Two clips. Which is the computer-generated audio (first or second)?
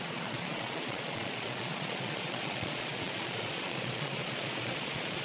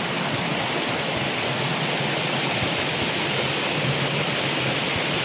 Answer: first